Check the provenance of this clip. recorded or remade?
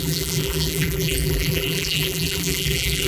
remade